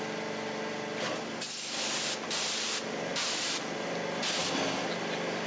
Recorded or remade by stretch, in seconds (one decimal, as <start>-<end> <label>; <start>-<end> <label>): 0.0-5.5 recorded